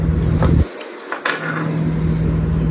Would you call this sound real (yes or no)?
yes